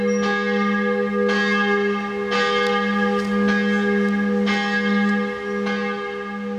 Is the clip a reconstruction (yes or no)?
no